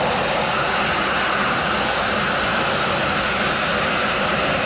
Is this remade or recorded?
recorded